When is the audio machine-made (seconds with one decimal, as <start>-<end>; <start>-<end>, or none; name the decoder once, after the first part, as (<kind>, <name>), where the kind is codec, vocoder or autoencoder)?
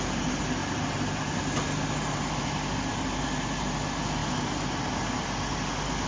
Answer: none